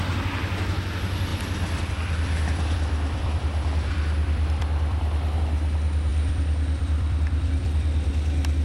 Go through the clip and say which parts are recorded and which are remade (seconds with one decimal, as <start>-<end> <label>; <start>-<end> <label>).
0.0-1.3 recorded; 1.3-5.4 remade; 5.4-6.1 recorded; 6.1-8.1 remade; 8.1-8.6 recorded